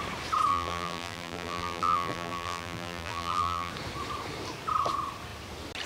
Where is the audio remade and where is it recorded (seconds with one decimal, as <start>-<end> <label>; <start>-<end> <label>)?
0.0-0.5 recorded; 0.5-3.7 remade; 3.7-5.9 recorded